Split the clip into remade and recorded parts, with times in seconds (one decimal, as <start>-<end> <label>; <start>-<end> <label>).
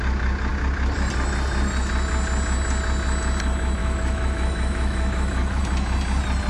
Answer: 0.0-3.8 recorded; 3.8-5.6 remade; 5.6-6.5 recorded